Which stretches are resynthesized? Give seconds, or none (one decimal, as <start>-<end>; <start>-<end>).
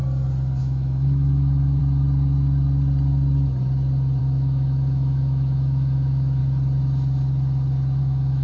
0.6-1.8; 4.2-6.4; 8.0-8.4